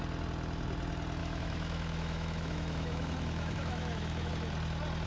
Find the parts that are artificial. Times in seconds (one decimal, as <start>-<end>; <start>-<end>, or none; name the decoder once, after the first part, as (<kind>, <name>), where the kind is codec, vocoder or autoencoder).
1.2-4.3 (autoencoder, DAC-VAE)